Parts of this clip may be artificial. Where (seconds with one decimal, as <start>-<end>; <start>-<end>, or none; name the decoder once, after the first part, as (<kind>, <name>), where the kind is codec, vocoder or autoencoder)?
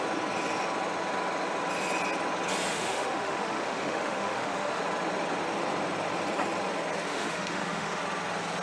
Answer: 2.7-4.8 (autoencoder, DAC-VAE); 7.1-8.0